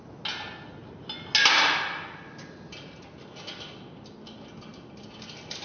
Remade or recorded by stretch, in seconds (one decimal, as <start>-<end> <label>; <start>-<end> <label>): 0.0-5.6 recorded